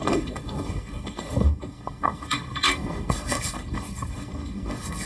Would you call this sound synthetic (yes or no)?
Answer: yes